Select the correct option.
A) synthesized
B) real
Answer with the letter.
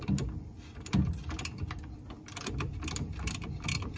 A